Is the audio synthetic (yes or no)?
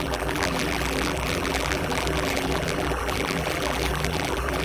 yes